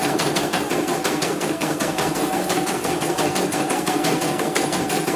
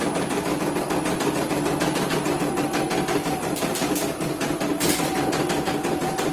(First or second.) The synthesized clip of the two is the first